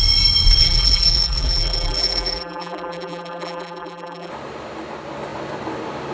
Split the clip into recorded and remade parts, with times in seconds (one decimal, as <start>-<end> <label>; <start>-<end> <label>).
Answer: 0.0-0.6 recorded; 0.6-4.3 remade; 4.3-6.1 recorded